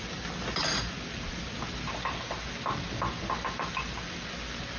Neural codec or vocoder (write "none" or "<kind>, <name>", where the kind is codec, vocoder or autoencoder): none